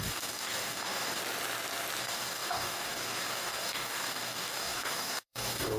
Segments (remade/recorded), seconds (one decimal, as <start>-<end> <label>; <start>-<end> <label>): 0.0-1.2 remade; 1.2-2.0 recorded; 2.0-5.8 remade